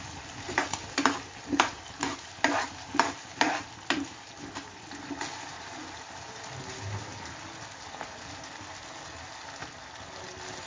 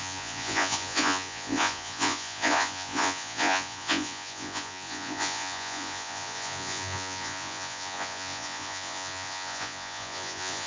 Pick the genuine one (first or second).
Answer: first